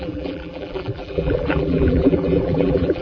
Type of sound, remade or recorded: remade